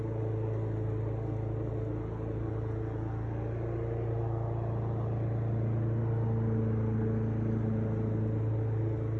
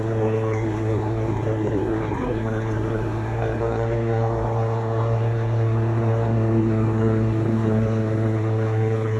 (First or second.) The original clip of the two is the first